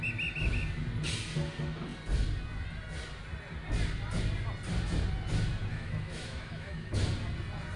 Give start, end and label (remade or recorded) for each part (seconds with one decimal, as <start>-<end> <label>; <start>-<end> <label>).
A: 0.0-5.7 recorded; 5.7-7.0 remade; 7.0-7.8 recorded